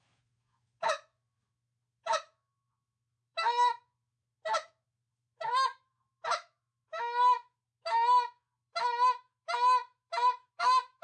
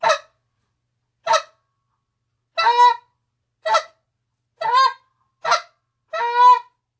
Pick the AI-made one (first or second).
first